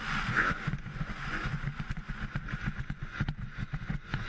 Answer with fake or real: fake